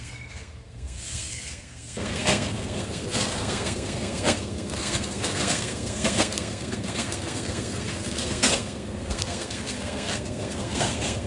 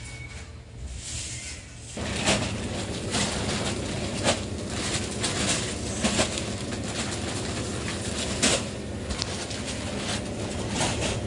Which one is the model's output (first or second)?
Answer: first